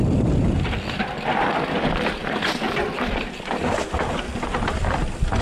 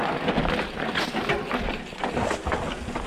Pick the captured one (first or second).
second